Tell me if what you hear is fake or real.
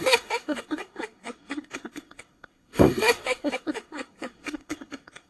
fake